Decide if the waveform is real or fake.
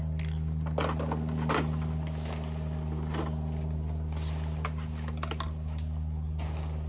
real